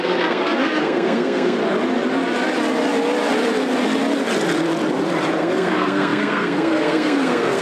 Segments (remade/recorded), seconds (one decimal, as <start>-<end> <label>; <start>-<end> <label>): 0.0-1.6 remade; 1.6-5.4 recorded; 5.4-7.6 remade

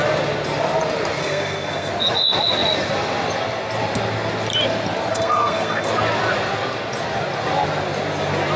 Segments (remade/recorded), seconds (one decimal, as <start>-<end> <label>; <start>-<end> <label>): 0.0-1.2 recorded; 1.2-1.9 remade; 1.9-5.1 recorded; 5.1-5.9 remade; 5.9-8.6 recorded

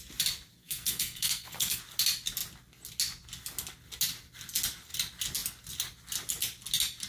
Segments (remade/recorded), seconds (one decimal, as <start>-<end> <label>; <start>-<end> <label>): 0.0-0.6 recorded; 0.6-1.8 remade; 1.8-7.1 recorded

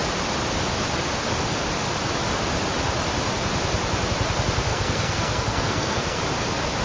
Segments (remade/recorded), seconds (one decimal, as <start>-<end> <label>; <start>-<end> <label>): 0.0-4.7 recorded; 4.7-6.2 remade; 6.2-6.8 recorded